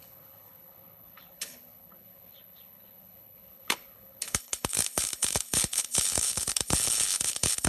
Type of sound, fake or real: fake